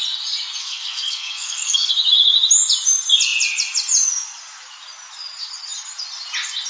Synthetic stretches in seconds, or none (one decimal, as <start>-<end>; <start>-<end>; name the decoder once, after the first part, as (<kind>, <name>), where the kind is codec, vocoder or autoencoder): 0.6-1.9 (codec, SNAC)